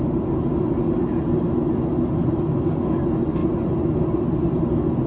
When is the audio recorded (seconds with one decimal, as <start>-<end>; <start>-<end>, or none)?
0.0-5.1